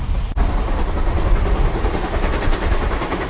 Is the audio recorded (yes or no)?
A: yes